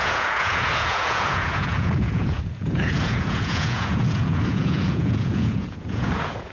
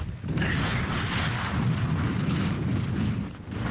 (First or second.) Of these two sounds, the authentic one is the second